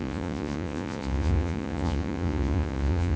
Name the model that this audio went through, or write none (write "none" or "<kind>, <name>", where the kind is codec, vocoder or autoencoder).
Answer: vocoder, Vocos